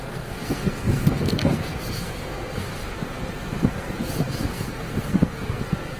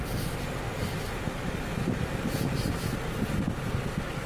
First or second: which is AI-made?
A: first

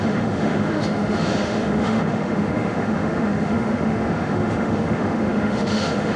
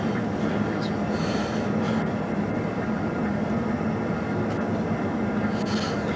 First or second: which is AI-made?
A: first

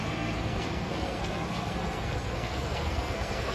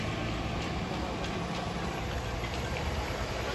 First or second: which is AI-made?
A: first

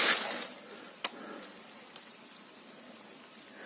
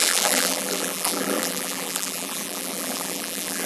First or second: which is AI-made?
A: second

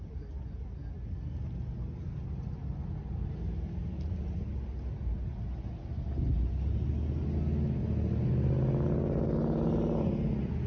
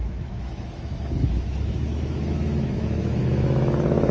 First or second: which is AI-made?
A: second